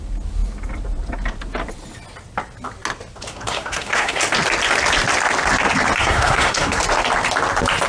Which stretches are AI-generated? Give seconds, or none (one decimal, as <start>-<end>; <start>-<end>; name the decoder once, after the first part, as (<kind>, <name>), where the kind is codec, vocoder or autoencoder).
3.3-4.2 (codec, SNAC); 6.0-6.8